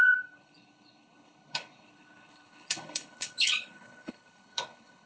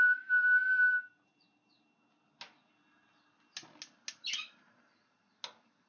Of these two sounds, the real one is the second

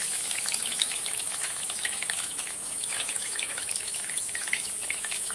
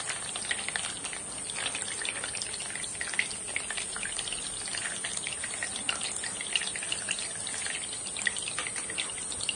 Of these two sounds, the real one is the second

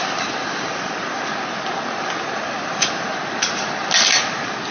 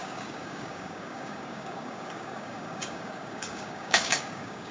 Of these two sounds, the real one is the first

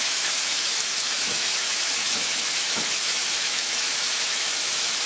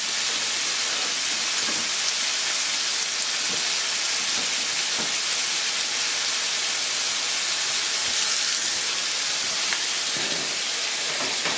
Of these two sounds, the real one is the second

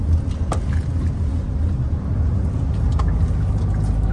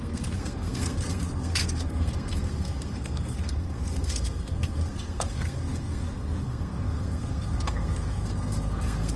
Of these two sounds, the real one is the first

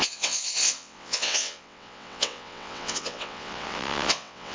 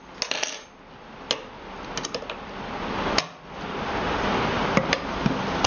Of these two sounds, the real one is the second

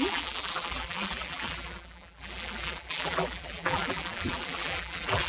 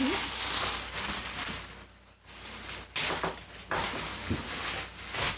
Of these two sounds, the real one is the second